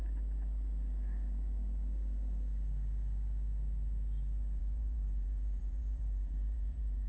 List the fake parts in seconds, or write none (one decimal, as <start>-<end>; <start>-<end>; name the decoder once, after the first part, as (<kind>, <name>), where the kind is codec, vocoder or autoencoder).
4.6-7.1 (vocoder, BigVGAN v2)